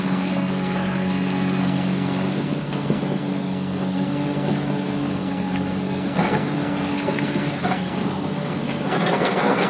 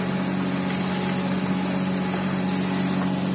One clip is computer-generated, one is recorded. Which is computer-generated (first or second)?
first